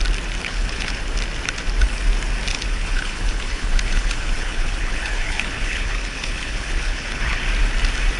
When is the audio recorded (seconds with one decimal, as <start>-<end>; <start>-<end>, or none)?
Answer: 0.0-0.4; 1.0-2.5; 7.4-8.2